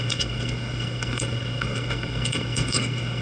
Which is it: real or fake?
fake